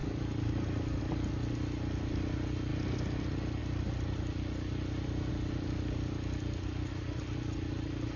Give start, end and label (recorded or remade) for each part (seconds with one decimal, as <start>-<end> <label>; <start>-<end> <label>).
0.0-1.0 remade; 1.0-8.2 recorded